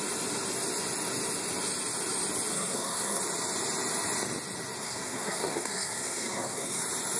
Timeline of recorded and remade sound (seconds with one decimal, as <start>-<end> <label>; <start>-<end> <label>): 0.0-2.5 recorded; 2.5-3.2 remade; 3.2-4.8 recorded; 4.8-6.8 remade; 6.8-7.2 recorded